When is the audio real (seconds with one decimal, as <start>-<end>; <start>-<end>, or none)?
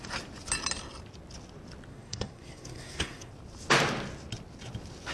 0.0-1.9; 3.3-5.1